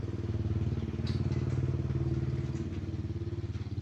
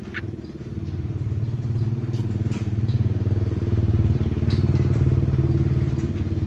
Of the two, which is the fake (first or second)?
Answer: second